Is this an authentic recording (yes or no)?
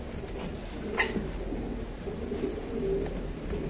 yes